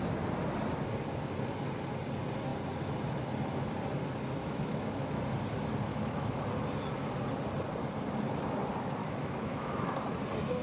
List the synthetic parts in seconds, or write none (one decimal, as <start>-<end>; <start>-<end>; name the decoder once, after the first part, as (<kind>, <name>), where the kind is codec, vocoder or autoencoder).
4.4-5.2 (autoencoder, DAC-VAE); 5.9-6.4; 9.0-9.9